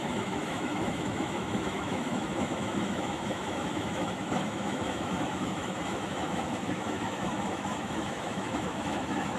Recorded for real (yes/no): no